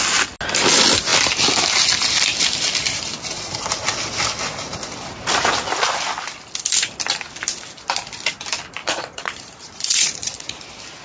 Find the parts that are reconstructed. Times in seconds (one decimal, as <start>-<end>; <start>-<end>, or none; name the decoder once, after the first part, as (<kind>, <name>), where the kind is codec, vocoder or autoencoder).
8.8-10.6 (vocoder, Vocos)

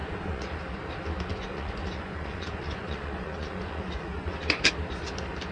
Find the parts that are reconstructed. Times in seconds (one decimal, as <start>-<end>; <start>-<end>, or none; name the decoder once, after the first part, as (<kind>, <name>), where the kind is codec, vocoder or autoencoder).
0.0-0.6 (vocoder, Vocos); 1.3-4.6